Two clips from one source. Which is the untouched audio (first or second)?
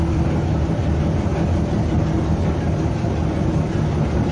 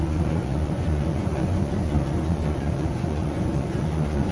first